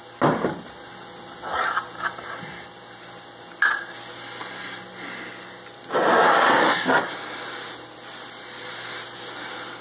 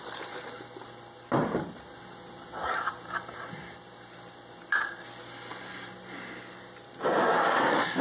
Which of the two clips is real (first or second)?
first